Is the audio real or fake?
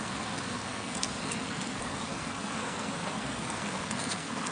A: fake